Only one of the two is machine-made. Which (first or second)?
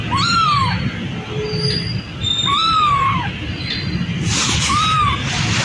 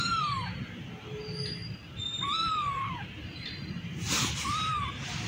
second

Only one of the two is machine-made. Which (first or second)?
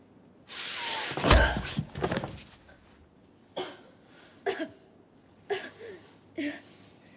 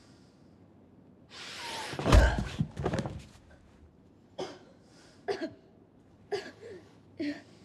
second